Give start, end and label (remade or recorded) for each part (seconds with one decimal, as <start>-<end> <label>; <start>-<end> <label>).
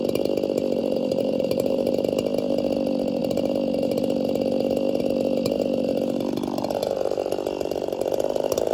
0.0-0.8 recorded; 0.8-1.9 remade; 1.9-8.7 recorded